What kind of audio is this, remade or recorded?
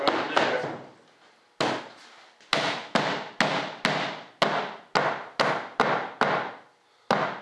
recorded